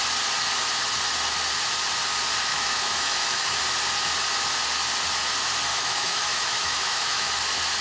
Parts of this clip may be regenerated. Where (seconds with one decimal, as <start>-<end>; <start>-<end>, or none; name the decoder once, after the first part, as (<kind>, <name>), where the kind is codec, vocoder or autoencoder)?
2.5-3.6 (autoencoder, DAC-VAE); 5.7-7.3